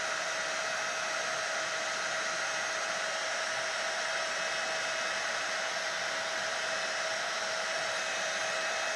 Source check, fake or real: real